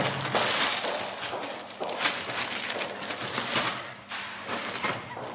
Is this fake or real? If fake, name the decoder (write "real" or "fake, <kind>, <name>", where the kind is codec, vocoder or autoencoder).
real